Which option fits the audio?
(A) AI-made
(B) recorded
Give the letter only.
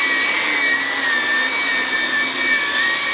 B